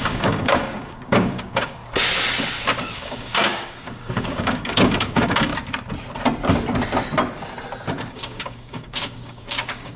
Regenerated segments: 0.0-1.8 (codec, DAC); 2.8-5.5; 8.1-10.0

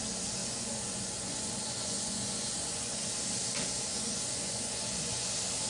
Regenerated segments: 0.4-3.1 (vocoder, Vocos); 3.9-5.3

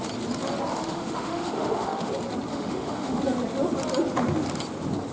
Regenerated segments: 0.7-2.1 (autoencoder, DAC-VAE); 2.5-3.2

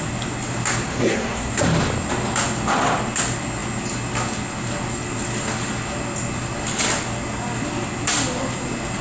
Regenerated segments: 0.9-1.5 (codec, SNAC)

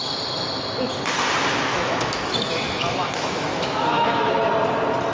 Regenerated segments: 1.7-4.3 (autoencoder, DAC-VAE)